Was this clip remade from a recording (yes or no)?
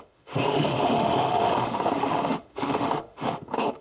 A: yes